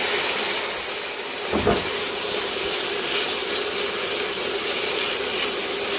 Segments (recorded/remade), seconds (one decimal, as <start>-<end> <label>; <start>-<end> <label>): 0.0-6.0 recorded